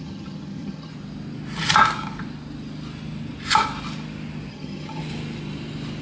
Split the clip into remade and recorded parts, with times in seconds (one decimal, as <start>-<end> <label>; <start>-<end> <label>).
0.0-0.9 remade; 0.9-4.5 recorded; 4.5-5.0 remade; 5.0-6.0 recorded

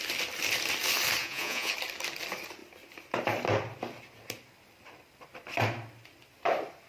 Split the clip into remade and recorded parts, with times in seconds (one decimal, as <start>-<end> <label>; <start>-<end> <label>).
0.0-1.2 recorded; 1.2-1.7 remade; 1.7-6.9 recorded

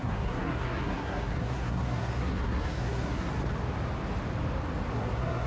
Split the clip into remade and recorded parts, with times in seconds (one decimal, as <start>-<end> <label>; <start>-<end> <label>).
0.0-3.3 remade; 3.3-4.9 recorded; 4.9-5.5 remade

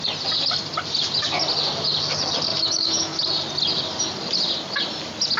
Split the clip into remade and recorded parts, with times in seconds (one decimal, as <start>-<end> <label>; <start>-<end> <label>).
0.0-2.5 recorded; 2.5-3.2 remade; 3.2-5.4 recorded

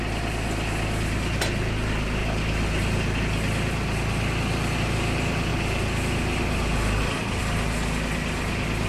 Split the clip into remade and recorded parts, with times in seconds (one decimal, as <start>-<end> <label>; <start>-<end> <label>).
0.0-8.9 recorded

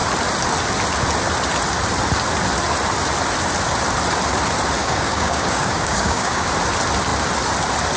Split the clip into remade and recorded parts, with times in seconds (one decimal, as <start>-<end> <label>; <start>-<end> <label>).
0.0-4.8 recorded; 4.8-6.5 remade; 6.5-8.0 recorded